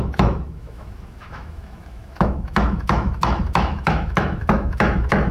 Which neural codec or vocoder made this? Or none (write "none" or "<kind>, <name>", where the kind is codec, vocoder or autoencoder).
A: autoencoder, DAC-VAE